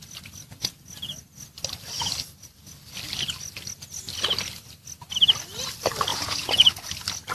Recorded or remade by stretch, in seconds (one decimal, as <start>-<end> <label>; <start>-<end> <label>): 0.0-6.1 recorded; 6.1-6.8 remade; 6.8-7.3 recorded